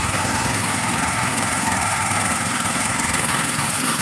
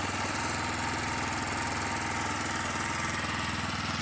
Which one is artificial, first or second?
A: first